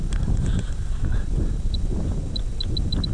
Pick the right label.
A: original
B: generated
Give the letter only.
A